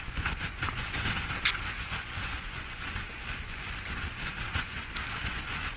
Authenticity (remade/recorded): remade